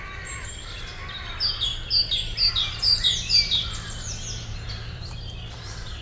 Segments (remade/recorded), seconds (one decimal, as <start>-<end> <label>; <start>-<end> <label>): 0.0-1.7 remade; 1.7-2.5 recorded; 2.5-6.0 remade